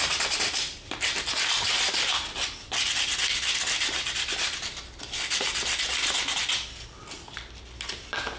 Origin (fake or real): real